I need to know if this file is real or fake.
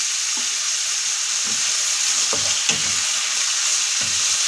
real